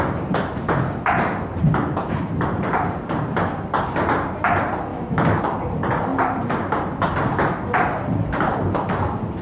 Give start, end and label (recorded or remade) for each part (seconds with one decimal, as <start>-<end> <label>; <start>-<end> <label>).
0.0-4.9 recorded; 4.9-5.4 remade; 5.4-9.4 recorded